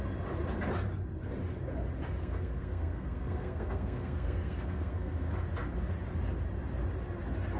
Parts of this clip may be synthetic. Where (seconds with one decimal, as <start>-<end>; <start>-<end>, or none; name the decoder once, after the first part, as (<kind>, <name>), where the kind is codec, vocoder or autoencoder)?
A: 2.2-5.3 (codec, SNAC)